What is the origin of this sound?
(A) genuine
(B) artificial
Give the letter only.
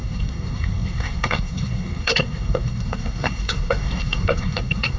B